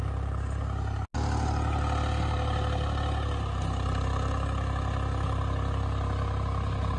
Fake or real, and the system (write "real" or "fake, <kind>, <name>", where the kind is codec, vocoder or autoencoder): real